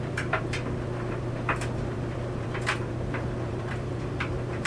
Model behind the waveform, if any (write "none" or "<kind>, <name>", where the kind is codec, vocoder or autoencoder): vocoder, BigVGAN v2